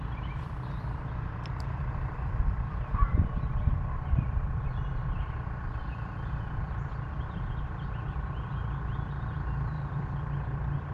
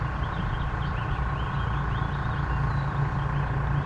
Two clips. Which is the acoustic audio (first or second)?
second